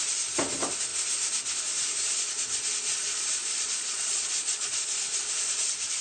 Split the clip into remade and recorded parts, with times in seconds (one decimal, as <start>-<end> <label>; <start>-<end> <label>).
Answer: 0.0-3.4 recorded; 3.4-4.9 remade; 4.9-6.0 recorded